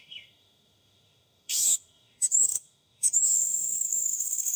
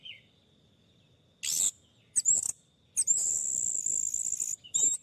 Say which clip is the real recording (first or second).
second